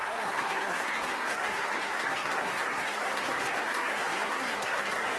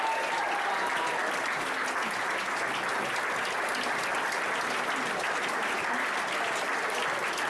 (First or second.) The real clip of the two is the second